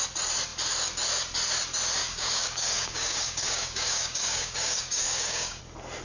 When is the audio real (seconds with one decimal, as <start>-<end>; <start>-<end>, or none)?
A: 0.0-2.0; 5.6-6.0